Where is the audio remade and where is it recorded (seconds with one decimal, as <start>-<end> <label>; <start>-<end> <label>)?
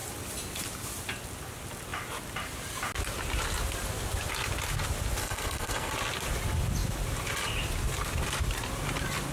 0.0-5.2 recorded; 5.2-5.9 remade; 5.9-9.3 recorded